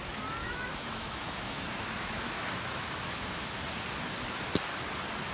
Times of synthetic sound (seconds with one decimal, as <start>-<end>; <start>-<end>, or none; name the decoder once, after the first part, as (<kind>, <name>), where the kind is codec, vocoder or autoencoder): 0.4-3.6 (autoencoder, DAC-VAE)